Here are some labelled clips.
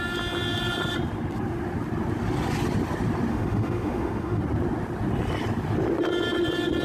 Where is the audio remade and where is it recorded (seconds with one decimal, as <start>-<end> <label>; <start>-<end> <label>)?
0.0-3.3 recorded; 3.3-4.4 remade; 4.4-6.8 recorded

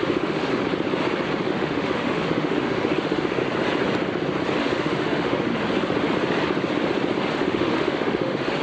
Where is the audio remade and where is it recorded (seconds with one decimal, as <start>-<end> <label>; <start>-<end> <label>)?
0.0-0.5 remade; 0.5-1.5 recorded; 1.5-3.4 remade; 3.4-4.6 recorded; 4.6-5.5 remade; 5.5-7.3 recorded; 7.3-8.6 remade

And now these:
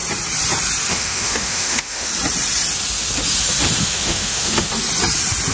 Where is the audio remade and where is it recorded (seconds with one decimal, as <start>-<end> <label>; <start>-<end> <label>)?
0.0-0.9 recorded; 0.9-2.1 remade; 2.1-3.8 recorded; 3.8-4.7 remade; 4.7-5.5 recorded

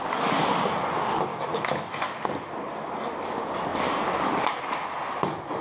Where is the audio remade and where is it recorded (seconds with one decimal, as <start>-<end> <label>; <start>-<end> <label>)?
0.0-1.3 recorded; 1.3-2.1 remade; 2.1-5.6 recorded